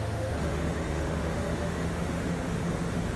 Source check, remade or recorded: remade